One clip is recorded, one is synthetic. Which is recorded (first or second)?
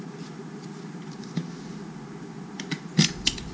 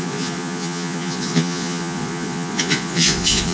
first